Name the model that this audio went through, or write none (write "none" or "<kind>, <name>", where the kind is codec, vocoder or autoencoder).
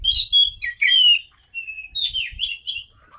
none